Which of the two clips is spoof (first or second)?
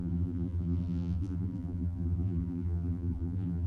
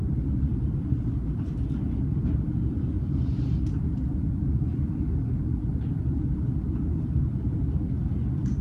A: first